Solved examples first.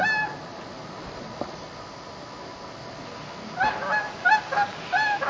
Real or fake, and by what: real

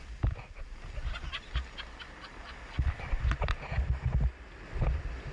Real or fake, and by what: real